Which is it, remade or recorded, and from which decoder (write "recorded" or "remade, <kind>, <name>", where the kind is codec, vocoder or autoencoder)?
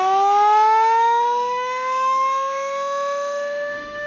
remade, autoencoder, DAC-VAE